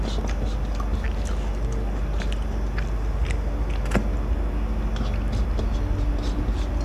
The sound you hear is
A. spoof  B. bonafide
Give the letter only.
B